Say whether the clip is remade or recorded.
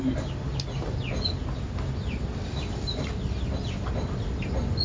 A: recorded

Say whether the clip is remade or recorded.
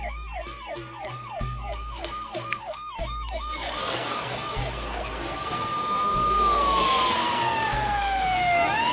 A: remade